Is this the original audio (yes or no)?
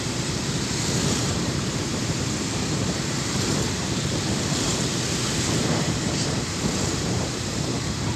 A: no